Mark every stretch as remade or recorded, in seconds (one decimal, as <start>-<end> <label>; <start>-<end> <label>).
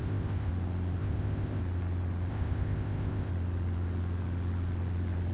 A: 0.0-0.5 remade; 0.5-1.0 recorded; 1.0-1.6 remade; 1.6-2.3 recorded; 2.3-3.3 remade; 3.3-5.3 recorded